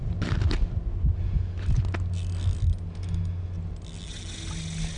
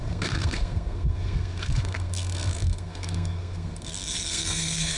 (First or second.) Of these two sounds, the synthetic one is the second